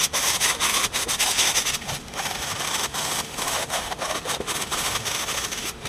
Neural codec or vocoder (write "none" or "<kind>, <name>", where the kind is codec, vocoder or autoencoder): autoencoder, DAC-VAE